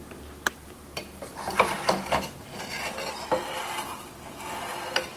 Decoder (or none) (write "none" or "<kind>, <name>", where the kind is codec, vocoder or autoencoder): none